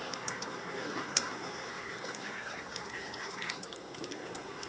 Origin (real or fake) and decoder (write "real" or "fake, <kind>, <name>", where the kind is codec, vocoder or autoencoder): fake, codec, SNAC